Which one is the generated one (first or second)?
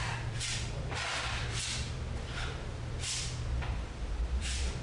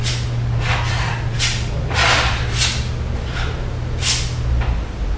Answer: first